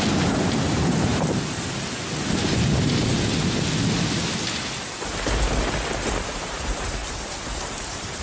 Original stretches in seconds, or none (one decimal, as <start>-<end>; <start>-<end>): 1.1-6.0; 7.0-7.6